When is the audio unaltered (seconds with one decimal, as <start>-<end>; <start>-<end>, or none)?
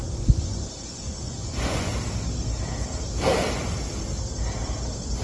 1.9-5.2